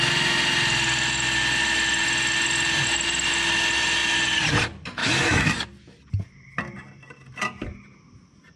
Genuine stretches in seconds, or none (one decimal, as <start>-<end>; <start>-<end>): 0.0-5.0; 5.5-8.6